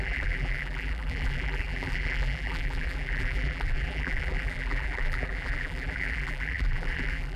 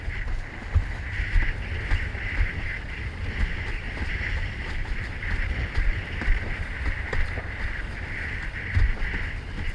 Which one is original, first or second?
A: second